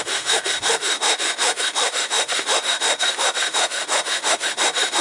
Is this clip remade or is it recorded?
remade